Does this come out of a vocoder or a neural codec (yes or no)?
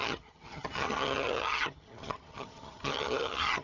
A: yes